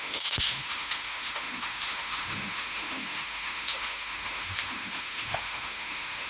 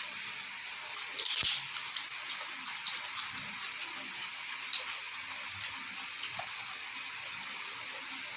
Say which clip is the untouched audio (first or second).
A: second